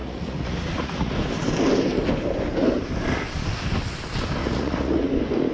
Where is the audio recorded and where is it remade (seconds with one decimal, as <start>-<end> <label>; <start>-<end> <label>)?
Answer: 0.0-1.1 remade; 1.1-4.4 recorded; 4.4-5.1 remade; 5.1-5.5 recorded